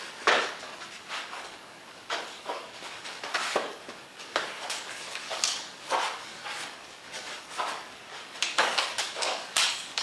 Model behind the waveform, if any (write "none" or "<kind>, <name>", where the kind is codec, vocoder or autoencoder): codec, DAC